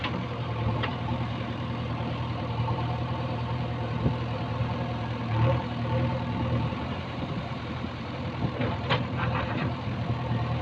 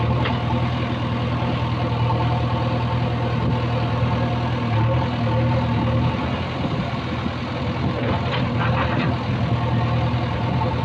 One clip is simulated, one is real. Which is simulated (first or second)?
first